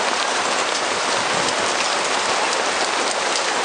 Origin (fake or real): real